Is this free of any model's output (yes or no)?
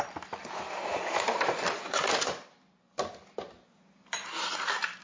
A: yes